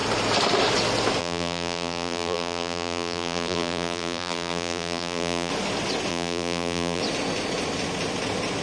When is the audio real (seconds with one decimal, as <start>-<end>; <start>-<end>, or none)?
0.0-1.2; 5.5-6.1; 7.0-8.6